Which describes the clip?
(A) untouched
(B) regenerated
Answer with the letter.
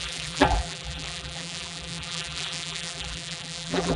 B